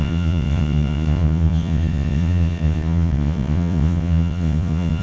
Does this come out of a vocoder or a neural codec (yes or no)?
yes